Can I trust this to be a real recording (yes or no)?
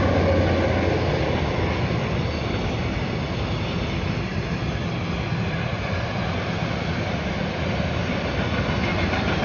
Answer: yes